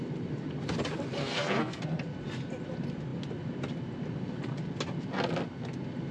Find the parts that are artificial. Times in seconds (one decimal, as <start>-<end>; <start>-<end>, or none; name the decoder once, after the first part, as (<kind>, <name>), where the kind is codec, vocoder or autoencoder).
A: 1.2-1.8 (codec, SNAC)